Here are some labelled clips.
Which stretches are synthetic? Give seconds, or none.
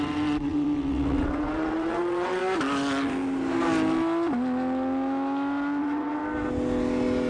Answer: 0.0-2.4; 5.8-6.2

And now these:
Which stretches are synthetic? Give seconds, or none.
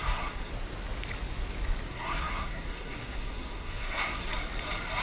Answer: 0.0-0.5; 1.9-4.3